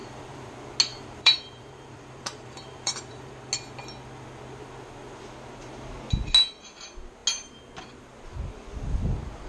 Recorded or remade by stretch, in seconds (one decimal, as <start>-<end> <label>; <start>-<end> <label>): 0.0-0.5 remade; 0.5-0.9 recorded; 0.9-3.3 remade; 3.3-9.5 recorded